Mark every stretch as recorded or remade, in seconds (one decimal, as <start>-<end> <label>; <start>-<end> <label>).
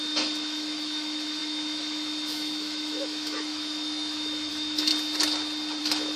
0.0-4.9 remade; 4.9-5.8 recorded; 5.8-6.2 remade